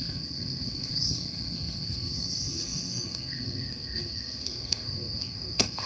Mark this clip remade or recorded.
remade